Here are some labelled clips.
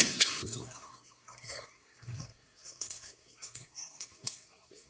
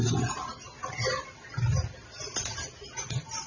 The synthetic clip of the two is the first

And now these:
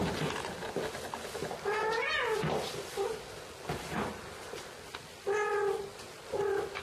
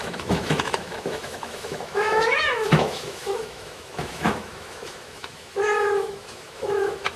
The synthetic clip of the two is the second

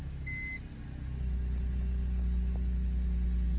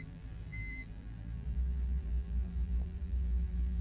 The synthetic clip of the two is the second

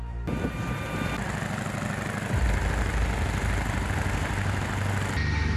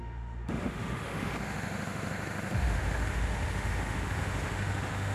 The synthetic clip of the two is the second